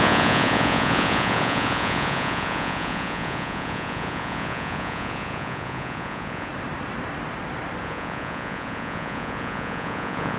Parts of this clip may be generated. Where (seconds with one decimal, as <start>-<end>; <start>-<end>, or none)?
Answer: 0.0-6.5; 7.8-10.4